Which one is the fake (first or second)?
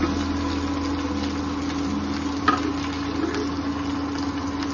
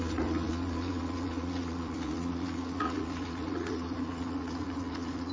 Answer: second